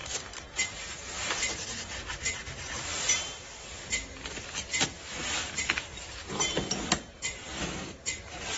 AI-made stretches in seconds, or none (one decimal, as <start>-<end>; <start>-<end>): 5.2-6.9